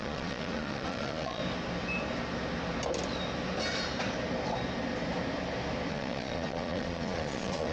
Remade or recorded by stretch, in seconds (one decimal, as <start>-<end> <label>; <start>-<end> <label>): 0.0-1.4 remade; 1.4-5.9 recorded; 5.9-7.7 remade